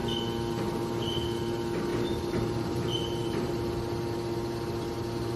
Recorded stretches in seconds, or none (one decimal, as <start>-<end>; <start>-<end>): 0.0-1.9; 3.5-5.4